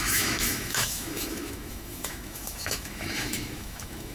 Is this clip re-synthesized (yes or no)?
yes